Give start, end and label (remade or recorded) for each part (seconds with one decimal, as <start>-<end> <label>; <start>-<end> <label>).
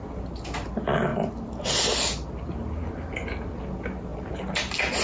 0.0-5.0 recorded